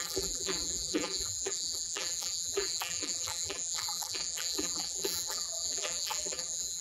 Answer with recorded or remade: remade